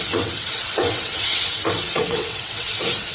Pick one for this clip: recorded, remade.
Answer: remade